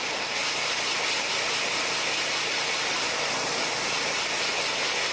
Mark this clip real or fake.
real